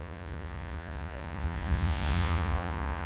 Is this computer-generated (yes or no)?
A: yes